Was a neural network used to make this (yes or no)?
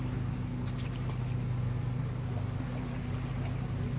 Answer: no